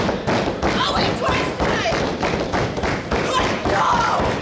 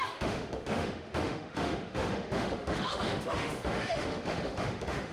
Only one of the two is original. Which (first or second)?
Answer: first